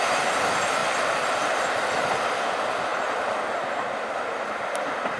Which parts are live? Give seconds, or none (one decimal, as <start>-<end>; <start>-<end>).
0.0-5.2

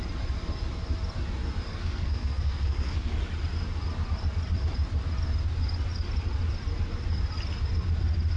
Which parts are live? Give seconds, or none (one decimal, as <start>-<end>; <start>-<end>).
0.0-1.7; 3.1-8.4

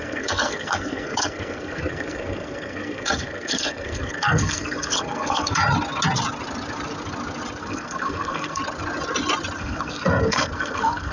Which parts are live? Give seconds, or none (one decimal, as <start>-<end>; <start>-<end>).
5.6-7.6; 8.6-9.6

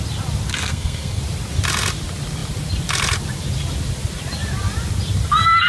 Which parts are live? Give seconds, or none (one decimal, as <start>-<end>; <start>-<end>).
0.0-0.5; 1.2-5.7

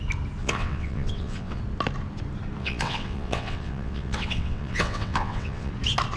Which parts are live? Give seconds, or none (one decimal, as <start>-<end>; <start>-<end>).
0.0-0.4; 1.6-2.6; 5.7-6.2